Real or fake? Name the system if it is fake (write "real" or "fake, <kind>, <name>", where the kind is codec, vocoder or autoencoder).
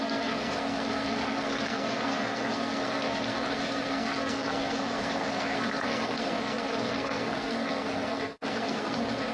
fake, codec, SNAC